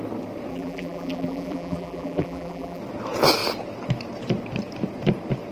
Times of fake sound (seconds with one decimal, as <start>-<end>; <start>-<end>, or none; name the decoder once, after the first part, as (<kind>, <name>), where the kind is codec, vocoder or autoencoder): 0.5-2.8 (vocoder, BigVGAN v2)